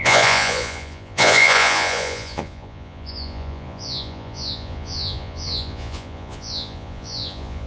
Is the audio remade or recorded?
remade